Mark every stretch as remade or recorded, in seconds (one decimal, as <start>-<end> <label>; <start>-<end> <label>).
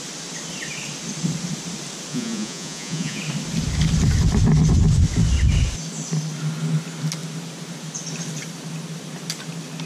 0.0-2.1 recorded; 2.1-3.2 remade; 3.2-9.9 recorded